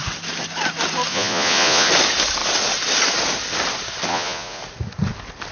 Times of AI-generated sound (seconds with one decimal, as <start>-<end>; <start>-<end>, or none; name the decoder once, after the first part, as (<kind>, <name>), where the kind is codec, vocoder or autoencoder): 1.1-1.9 (vocoder, Vocos); 4.1-4.6